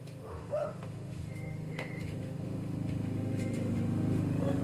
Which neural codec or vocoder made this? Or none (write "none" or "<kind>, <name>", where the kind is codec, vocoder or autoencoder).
autoencoder, DAC-VAE